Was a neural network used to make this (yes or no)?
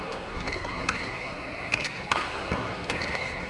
yes